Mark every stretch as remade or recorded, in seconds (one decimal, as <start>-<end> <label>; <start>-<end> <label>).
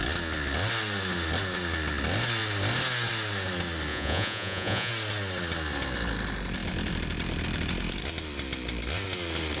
0.0-3.9 recorded; 3.9-4.9 remade; 4.9-9.6 recorded